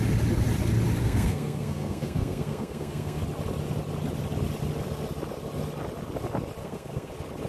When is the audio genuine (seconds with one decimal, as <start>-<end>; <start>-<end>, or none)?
0.0-1.0; 3.2-6.6; 7.1-7.5